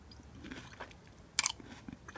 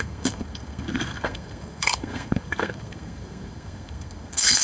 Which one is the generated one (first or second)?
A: second